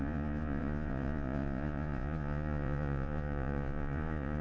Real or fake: fake